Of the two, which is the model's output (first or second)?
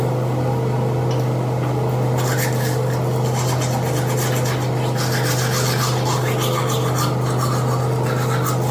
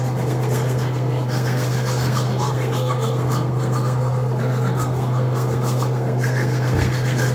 second